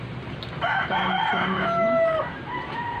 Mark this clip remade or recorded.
remade